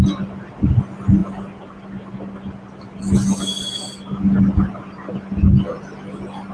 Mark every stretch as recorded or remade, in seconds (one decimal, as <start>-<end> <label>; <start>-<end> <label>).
0.0-6.5 recorded